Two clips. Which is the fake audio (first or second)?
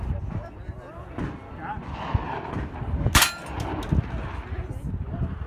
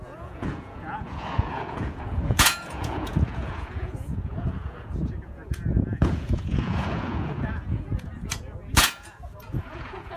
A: second